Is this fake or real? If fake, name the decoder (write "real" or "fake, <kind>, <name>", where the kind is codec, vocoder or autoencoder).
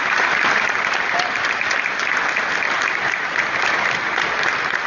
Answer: real